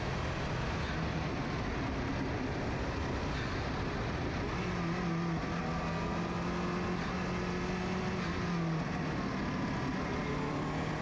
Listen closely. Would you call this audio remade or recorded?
recorded